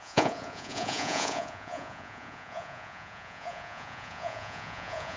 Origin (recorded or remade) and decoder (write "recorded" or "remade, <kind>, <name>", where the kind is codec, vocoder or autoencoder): remade, vocoder, Vocos